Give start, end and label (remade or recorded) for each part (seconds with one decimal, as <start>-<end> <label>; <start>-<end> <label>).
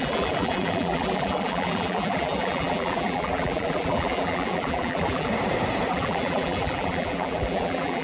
0.0-5.3 remade; 5.3-5.9 recorded; 5.9-8.0 remade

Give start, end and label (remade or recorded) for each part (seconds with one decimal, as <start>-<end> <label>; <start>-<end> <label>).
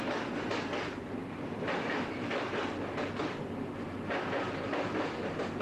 0.0-1.2 recorded; 1.2-4.1 remade; 4.1-5.6 recorded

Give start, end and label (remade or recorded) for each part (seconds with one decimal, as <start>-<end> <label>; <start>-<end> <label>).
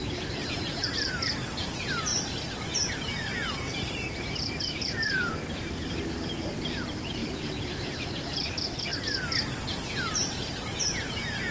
0.0-8.9 remade; 8.9-9.9 recorded; 9.9-11.5 remade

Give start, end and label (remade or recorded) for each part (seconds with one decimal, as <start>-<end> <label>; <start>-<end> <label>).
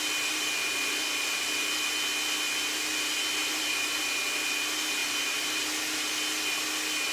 0.0-3.4 recorded; 3.4-4.0 remade; 4.0-5.0 recorded; 5.0-6.1 remade; 6.1-7.1 recorded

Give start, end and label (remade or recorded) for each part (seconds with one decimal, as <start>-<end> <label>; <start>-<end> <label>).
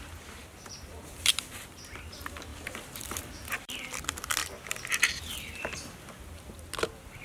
0.0-4.4 remade; 4.4-4.9 recorded; 4.9-7.2 remade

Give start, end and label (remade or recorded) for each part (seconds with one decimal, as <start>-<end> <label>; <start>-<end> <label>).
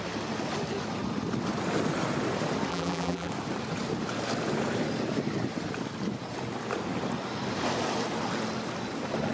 0.0-2.7 recorded; 2.7-3.3 remade; 3.3-9.3 recorded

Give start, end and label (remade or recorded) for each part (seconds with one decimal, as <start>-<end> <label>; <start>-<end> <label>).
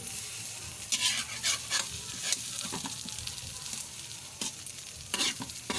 0.0-5.8 remade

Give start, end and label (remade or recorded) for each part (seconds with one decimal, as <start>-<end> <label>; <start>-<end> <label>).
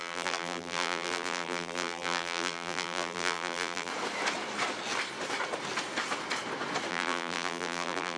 0.0-3.9 remade; 3.9-6.9 recorded; 6.9-8.2 remade